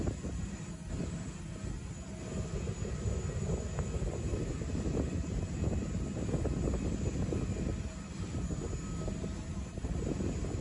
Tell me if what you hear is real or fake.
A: real